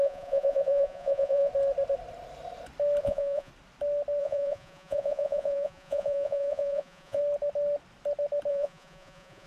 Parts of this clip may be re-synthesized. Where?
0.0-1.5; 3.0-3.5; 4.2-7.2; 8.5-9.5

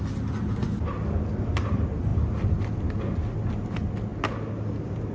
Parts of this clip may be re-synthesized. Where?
none

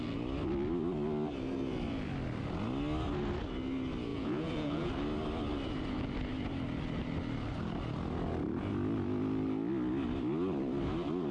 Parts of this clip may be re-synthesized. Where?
4.1-4.9

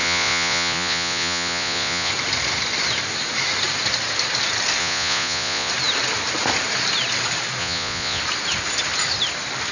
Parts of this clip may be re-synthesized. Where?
0.0-2.1; 4.8-5.7; 7.6-8.2

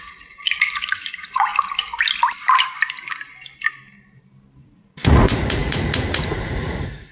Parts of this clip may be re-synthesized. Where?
0.0-1.5; 4.6-7.1

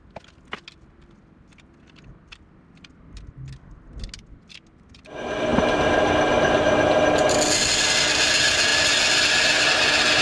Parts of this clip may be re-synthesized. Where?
none

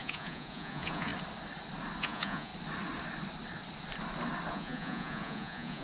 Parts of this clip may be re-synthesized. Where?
0.0-1.1; 2.0-2.5; 4.5-5.8

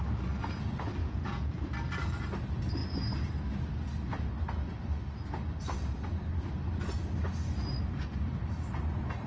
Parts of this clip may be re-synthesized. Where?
1.0-1.6